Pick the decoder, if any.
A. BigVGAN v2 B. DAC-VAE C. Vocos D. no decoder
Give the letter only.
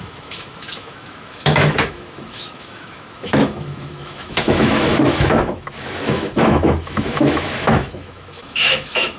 B